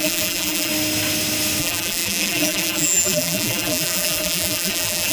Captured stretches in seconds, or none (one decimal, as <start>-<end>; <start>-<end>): 0.7-1.6